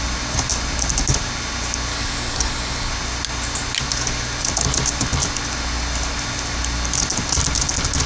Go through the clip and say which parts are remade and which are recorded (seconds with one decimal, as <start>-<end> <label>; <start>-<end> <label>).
0.0-1.9 recorded; 1.9-2.9 remade; 2.9-8.1 recorded